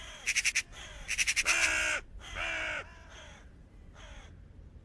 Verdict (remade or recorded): recorded